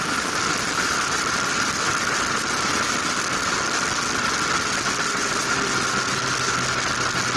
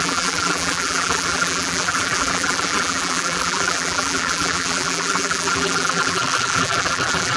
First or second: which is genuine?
first